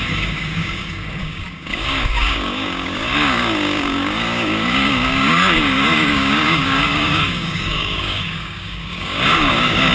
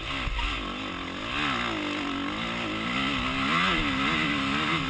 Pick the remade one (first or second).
first